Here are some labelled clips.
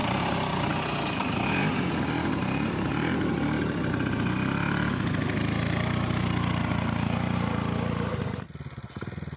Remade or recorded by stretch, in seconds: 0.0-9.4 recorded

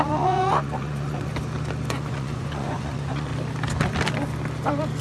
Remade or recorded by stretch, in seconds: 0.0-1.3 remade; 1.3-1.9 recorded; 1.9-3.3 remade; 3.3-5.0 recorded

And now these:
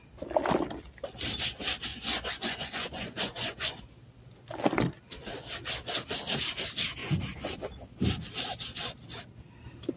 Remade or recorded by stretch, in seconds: 0.0-1.9 recorded; 1.9-3.7 remade; 3.7-7.0 recorded; 7.0-7.5 remade; 7.5-10.0 recorded

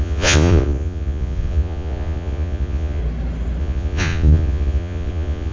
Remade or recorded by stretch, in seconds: 0.0-3.0 remade; 3.0-3.6 recorded; 3.6-5.5 remade